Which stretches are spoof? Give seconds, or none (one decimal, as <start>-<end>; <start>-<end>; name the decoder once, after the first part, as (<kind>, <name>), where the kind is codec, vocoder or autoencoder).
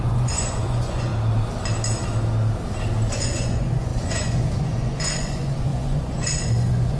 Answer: 0.0-1.1 (vocoder, Vocos); 3.1-7.0